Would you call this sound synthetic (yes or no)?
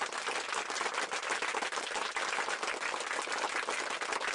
no